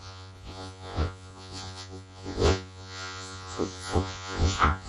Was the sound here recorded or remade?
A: remade